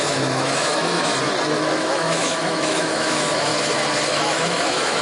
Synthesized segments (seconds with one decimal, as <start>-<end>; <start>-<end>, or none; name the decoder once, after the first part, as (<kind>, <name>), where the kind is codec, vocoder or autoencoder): 0.0-1.1 (autoencoder, DAC-VAE); 1.7-3.5; 4.1-5.0